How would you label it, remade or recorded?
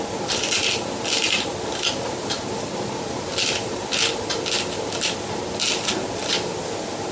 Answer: recorded